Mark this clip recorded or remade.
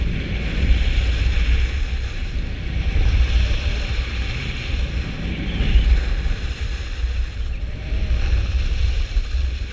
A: recorded